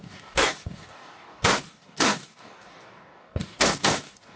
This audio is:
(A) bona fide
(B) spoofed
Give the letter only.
B